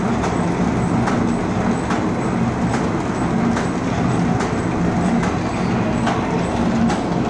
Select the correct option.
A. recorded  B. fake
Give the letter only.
A